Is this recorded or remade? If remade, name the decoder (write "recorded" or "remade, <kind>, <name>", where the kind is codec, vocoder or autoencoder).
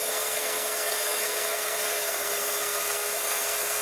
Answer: remade, codec, SNAC